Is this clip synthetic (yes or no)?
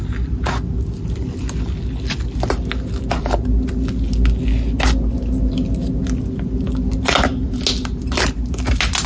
no